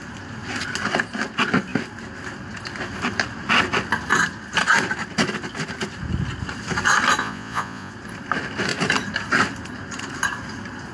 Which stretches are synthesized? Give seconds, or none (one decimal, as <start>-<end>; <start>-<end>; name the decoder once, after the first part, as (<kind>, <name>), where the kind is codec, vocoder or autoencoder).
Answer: 7.2-7.9 (vocoder, Vocos)